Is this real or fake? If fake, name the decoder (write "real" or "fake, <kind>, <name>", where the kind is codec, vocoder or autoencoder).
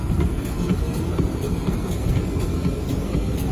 fake, codec, SNAC